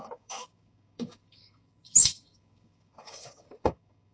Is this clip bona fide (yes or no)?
no